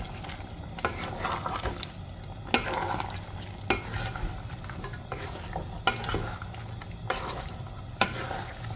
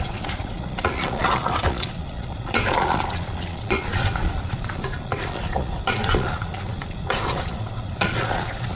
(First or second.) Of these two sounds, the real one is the first